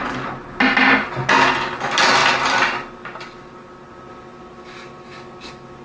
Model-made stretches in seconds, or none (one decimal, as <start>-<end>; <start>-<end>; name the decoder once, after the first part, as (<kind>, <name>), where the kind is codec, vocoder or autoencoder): none